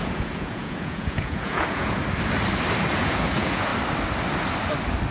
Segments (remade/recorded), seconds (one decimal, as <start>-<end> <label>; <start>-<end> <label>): 0.0-2.0 remade; 2.0-2.9 recorded; 2.9-3.7 remade; 3.7-5.1 recorded